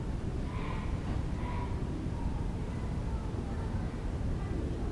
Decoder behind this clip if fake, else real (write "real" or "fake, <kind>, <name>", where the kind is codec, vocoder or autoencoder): real